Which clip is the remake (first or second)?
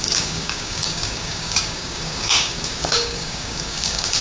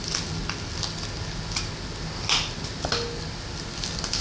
first